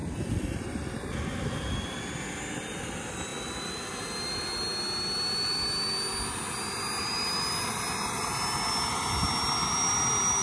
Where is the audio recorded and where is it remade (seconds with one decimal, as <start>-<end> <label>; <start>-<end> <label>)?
0.0-10.4 recorded